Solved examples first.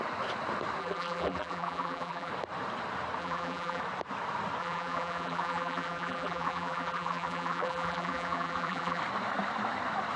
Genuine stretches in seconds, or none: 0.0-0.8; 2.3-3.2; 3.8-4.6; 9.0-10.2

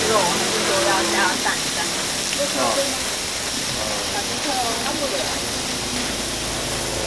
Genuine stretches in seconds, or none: 0.0-7.1

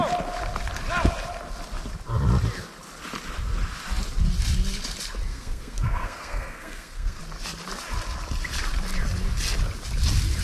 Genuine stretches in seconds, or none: 0.0-5.3; 7.2-10.4

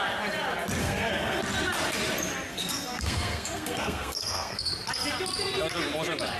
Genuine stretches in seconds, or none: 0.0-0.8; 1.4-2.5; 4.7-6.4

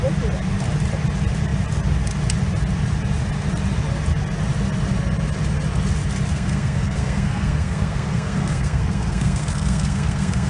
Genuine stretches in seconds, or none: 0.0-6.3

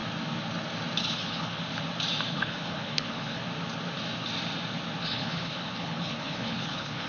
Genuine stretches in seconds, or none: 0.0-1.0; 1.6-2.3; 3.4-5.0

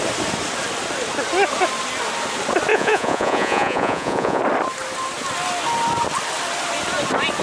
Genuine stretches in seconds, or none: 0.0-2.7; 4.4-7.4